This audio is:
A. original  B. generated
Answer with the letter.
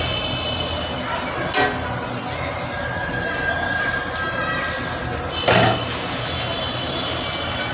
A